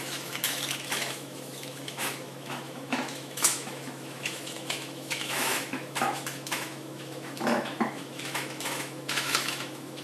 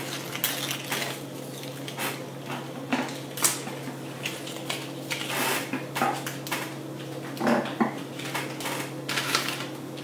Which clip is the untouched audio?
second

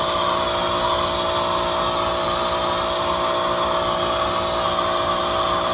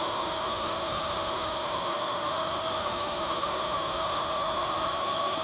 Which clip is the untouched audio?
first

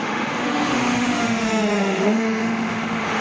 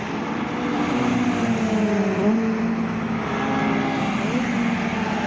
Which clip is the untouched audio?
second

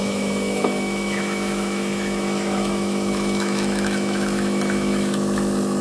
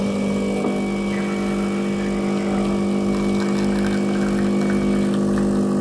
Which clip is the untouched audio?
second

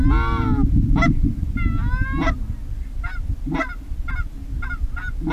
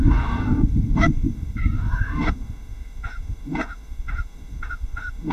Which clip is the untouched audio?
first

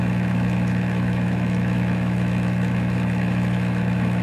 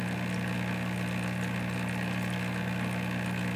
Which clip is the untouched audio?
second